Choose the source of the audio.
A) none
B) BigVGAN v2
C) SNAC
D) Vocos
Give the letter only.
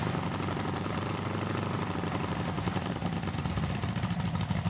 B